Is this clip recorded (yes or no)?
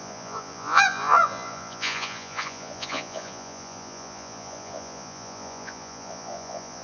no